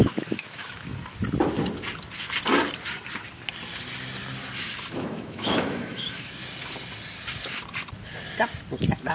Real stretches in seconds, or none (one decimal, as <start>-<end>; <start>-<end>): 0.9-4.9; 6.4-9.1